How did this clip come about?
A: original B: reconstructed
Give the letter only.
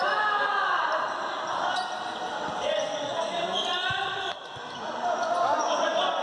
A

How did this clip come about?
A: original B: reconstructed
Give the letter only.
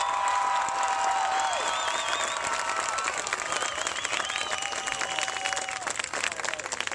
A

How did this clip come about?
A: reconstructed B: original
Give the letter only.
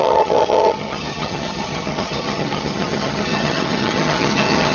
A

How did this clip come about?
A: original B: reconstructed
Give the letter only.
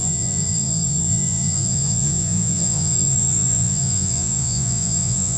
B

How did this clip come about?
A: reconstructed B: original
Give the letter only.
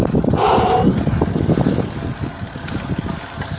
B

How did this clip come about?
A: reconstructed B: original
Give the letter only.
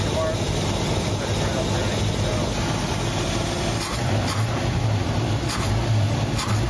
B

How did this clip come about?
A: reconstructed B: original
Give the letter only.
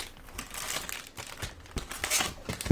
B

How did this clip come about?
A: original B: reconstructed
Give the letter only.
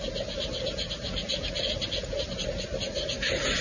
A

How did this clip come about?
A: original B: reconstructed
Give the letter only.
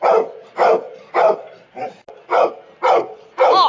A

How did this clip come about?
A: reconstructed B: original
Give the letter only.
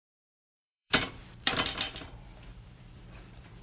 A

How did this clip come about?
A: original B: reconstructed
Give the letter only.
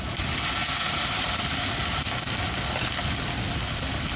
A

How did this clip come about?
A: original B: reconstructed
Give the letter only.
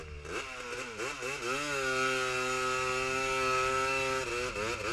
A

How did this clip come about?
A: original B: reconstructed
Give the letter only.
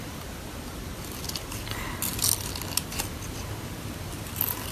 A